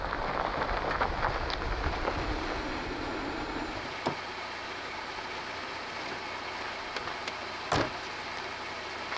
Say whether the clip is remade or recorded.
recorded